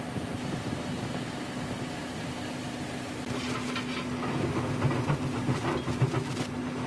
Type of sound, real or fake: real